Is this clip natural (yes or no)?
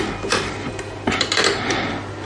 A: no